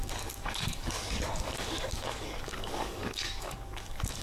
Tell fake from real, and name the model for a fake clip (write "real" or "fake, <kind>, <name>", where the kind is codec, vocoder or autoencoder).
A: fake, codec, DAC